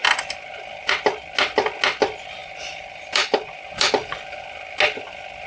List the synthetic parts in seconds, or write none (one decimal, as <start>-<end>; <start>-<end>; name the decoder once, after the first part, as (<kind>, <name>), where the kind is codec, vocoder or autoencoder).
0.0-0.9 (vocoder, BigVGAN v2); 2.4-3.9

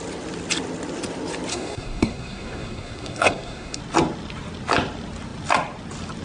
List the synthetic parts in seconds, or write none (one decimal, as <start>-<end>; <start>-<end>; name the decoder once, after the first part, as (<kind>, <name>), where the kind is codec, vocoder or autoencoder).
1.5-3.8 (codec, SNAC)

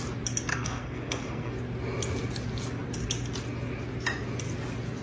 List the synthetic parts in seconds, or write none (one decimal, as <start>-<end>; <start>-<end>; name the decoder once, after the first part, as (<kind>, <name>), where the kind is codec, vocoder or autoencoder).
0.5-1.5 (codec, SNAC)

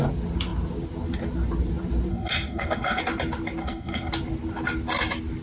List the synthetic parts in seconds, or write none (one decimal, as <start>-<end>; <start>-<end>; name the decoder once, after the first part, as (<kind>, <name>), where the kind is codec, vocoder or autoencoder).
2.1-3.0 (codec, SNAC); 3.6-4.1

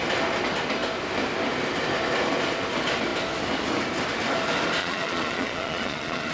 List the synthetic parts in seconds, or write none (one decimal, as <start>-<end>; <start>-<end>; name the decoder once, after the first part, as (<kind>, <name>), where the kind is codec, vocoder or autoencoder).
4.8-6.3 (vocoder, Vocos)

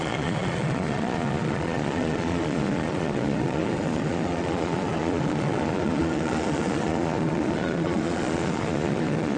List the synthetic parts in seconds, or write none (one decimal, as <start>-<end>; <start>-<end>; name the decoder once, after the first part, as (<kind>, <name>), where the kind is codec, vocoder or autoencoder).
0.0-9.4 (vocoder, Vocos)

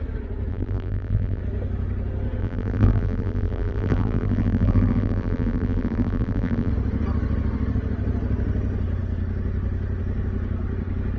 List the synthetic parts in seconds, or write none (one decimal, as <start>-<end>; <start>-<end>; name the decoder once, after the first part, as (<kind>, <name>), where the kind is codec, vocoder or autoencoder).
0.5-1.4 (vocoder, BigVGAN v2); 2.4-6.7

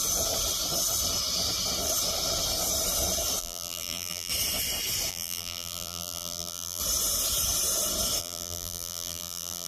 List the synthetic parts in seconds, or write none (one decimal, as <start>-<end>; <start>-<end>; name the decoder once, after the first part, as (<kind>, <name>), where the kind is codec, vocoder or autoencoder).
3.4-4.3 (vocoder, BigVGAN v2); 5.1-6.8; 8.2-9.7